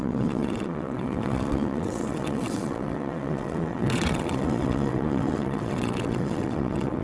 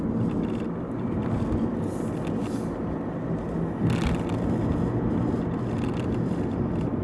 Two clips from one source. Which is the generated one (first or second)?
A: first